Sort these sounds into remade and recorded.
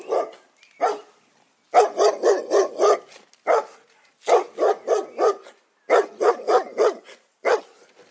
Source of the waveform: recorded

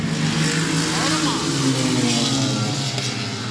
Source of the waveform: recorded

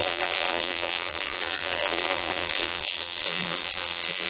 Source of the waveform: remade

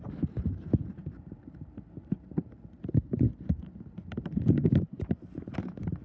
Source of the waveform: remade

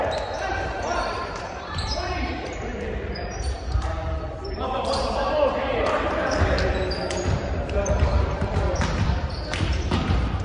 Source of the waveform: remade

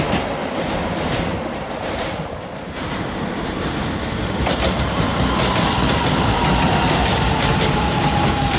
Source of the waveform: recorded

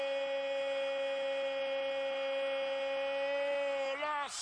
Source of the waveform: recorded